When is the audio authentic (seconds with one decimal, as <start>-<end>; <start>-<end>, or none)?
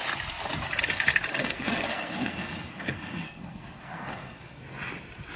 0.0-1.4; 4.6-5.4